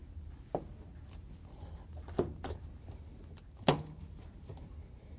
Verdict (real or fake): real